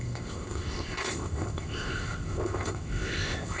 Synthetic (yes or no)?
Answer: yes